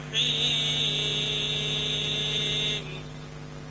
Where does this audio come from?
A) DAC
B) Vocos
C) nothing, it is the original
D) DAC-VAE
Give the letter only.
C